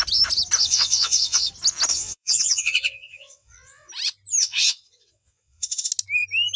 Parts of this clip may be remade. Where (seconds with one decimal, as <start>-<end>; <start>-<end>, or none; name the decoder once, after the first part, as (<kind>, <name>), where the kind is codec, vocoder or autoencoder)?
0.6-1.5 (vocoder, WaveNeXt); 1.9-3.9; 4.4-5.9